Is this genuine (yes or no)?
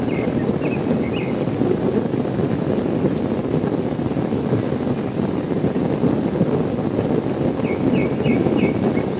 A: yes